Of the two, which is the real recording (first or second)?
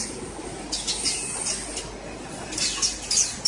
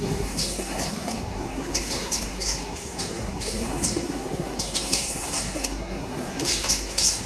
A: first